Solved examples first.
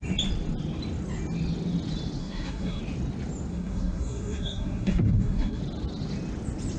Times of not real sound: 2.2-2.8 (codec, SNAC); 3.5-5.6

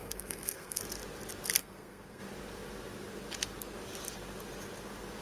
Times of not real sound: 0.0-0.8 (codec, SNAC); 1.6-2.2

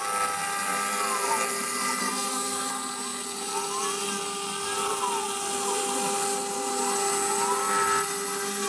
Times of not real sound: 2.0-2.7 (codec, SNAC)

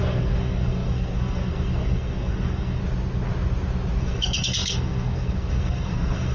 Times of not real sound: 0.0-2.8 (codec, SNAC); 4.0-6.3

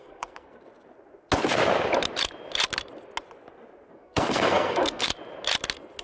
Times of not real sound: 0.0-0.7 (codec, SNAC); 3.9-5.1